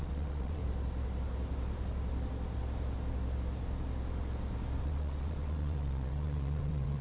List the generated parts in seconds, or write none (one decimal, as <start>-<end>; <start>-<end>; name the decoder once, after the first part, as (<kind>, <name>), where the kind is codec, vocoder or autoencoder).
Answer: 0.0-0.6 (vocoder, WaveNeXt); 4.8-7.0